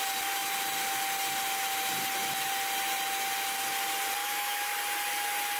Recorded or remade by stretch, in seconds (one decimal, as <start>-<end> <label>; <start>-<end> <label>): 0.0-4.2 recorded; 4.2-4.7 remade; 4.7-5.6 recorded